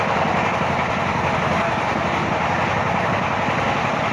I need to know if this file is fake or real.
real